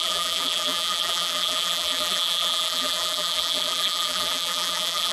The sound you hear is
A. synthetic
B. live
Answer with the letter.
A